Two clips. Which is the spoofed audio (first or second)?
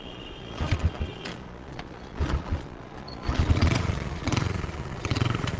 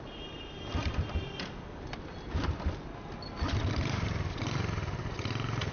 first